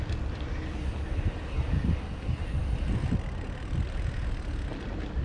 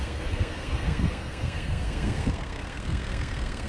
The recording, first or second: first